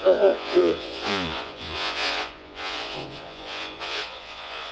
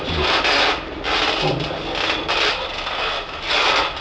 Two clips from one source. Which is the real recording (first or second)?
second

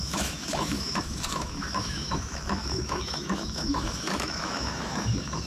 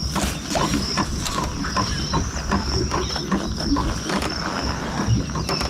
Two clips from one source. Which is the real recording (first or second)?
second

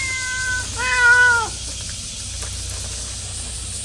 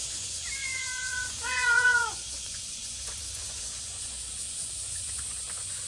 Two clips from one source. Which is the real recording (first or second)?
first